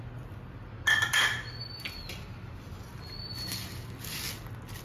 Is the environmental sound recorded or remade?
recorded